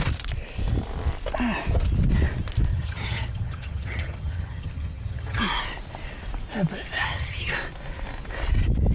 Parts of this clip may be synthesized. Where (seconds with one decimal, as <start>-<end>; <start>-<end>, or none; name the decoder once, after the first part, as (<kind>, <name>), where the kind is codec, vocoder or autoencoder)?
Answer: 2.7-5.4 (vocoder, HiFi-GAN); 7.0-7.5